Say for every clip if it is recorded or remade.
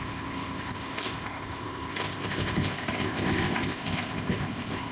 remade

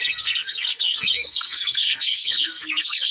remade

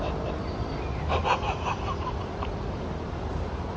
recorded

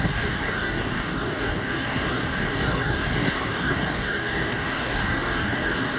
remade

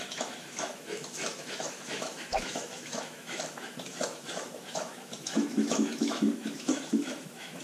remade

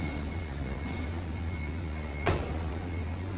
remade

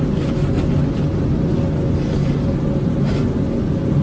recorded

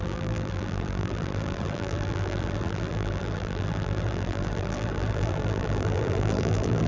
remade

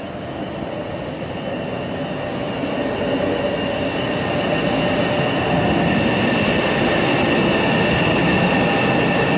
recorded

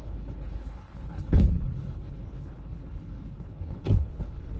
remade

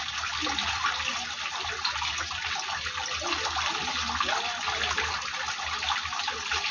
recorded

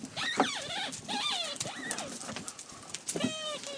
recorded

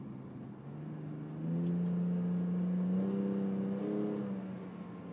recorded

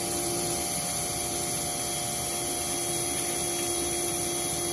recorded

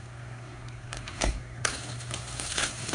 remade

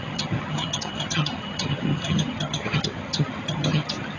remade